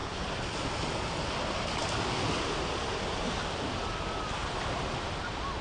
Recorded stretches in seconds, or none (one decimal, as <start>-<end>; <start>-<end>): 0.7-4.4; 5.1-5.6